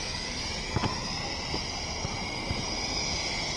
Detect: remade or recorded recorded